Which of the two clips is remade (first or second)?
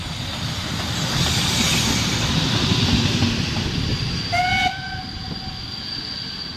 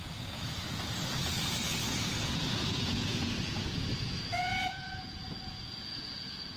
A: second